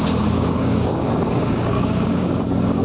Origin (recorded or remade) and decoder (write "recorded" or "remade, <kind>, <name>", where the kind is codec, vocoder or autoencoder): remade, codec, DAC